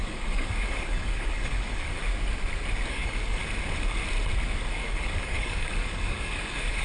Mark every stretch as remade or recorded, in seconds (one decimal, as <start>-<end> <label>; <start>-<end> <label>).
0.0-2.0 remade; 2.0-2.9 recorded; 2.9-3.4 remade; 3.4-4.7 recorded; 4.7-6.8 remade